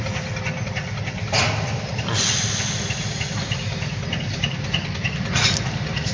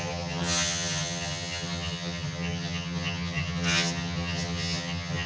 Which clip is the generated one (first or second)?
second